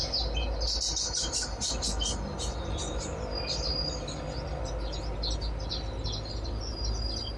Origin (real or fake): real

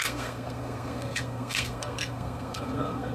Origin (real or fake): fake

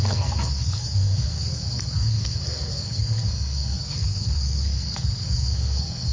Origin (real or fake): fake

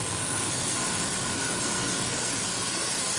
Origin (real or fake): fake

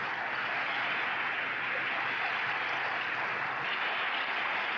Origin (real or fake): real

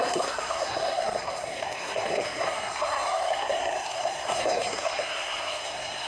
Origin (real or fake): fake